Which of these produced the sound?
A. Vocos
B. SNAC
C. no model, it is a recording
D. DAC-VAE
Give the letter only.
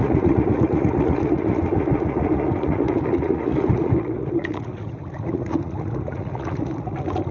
A